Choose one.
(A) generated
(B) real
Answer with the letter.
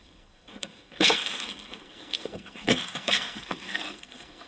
A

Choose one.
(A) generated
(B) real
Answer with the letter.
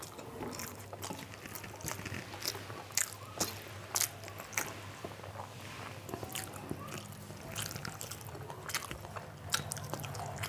B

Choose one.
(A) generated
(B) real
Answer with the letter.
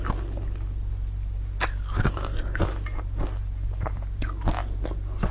B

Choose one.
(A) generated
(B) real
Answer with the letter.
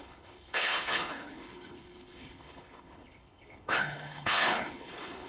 A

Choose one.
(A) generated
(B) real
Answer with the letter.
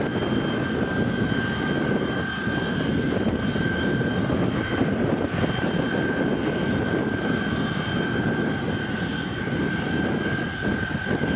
B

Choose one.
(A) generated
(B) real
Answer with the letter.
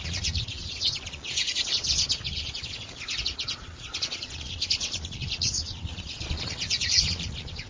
A